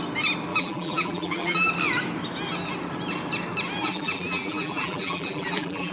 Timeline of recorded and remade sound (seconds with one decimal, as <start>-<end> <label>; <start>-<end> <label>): 0.0-0.5 recorded; 0.5-1.7 remade; 1.7-3.8 recorded; 3.8-5.9 remade